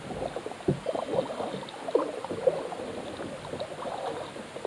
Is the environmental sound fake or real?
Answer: real